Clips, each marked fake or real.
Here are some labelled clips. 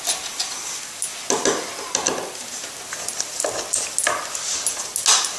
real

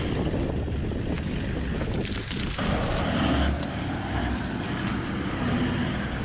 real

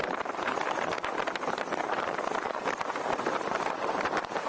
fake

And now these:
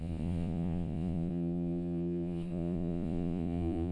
fake